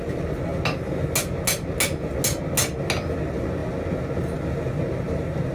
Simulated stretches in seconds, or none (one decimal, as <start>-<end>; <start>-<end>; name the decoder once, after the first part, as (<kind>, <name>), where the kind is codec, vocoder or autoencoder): none